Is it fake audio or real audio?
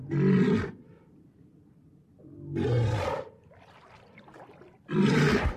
real